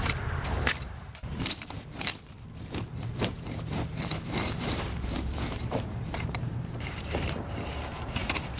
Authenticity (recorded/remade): remade